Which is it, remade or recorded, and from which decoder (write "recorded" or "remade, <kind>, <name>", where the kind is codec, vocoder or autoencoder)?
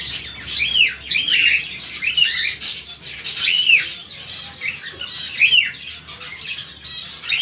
remade, vocoder, BigVGAN v2